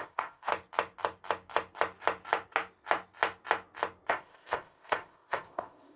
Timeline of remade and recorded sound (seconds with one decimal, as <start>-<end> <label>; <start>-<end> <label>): 0.0-0.5 remade; 0.5-4.1 recorded; 4.1-6.0 remade